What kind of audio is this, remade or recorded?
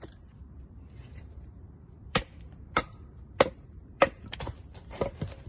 remade